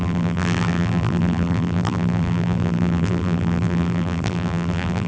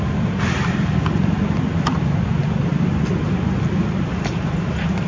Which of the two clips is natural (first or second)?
second